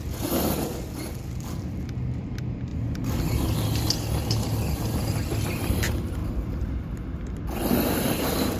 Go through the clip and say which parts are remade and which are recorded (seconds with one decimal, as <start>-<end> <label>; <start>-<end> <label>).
0.0-8.6 recorded